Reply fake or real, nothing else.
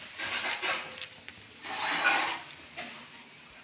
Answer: real